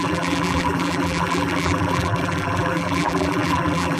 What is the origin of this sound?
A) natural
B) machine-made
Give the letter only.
B